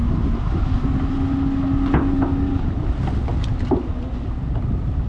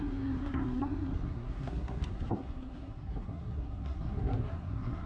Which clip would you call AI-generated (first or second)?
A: second